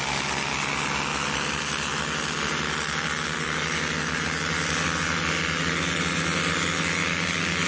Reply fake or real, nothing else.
real